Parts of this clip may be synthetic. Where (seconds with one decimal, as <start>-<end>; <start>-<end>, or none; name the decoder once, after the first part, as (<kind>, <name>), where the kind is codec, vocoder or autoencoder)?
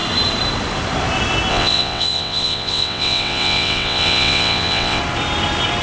1.5-5.0 (vocoder, WaveNeXt)